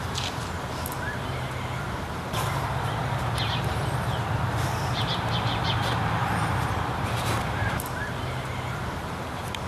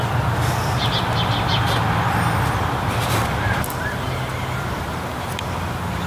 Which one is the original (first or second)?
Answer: second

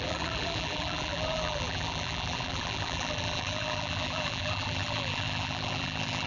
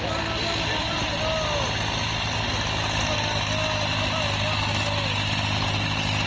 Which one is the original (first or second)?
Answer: second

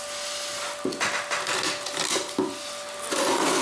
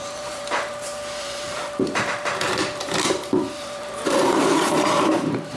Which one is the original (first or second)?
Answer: first